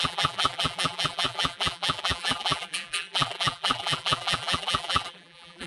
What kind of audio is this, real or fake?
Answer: fake